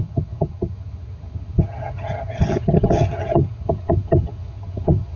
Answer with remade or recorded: remade